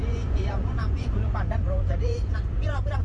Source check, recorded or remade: remade